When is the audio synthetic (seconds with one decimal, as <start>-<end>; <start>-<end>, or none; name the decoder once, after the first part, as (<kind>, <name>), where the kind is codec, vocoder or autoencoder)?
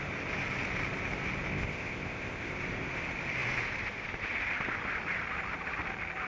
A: 1.5-2.5 (codec, ZipCodec)